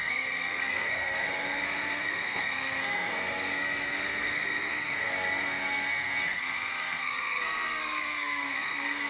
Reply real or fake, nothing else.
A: fake